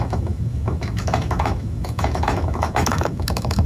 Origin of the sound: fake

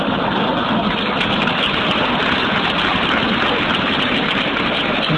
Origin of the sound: real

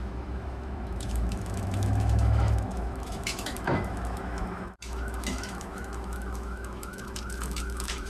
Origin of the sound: fake